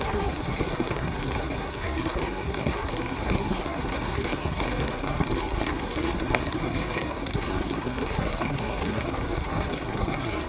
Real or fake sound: fake